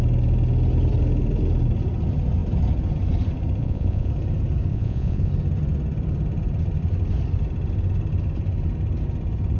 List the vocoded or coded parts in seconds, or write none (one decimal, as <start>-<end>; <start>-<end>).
3.6-4.1; 4.7-5.3